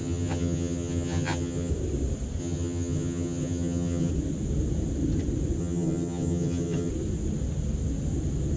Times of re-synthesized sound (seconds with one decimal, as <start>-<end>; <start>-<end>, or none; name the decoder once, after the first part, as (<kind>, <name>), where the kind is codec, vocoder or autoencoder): 0.0-1.7 (vocoder, HiFi-GAN); 2.4-4.1; 5.6-6.9